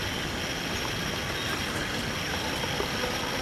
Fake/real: real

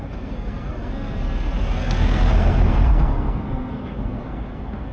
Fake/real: fake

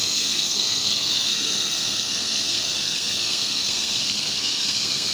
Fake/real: fake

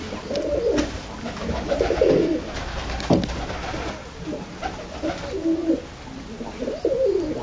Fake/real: real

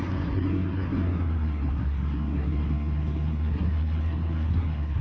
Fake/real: fake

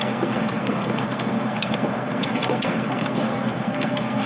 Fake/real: fake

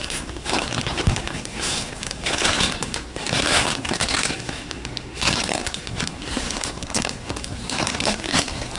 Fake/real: fake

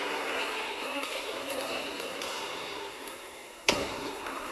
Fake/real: fake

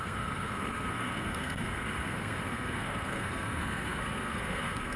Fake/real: fake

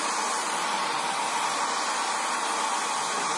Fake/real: real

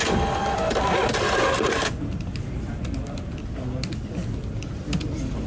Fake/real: real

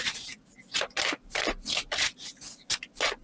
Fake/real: real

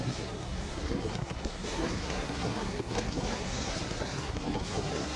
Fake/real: fake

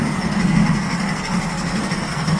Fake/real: fake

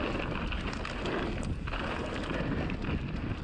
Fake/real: real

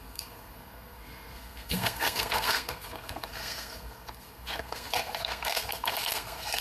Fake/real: fake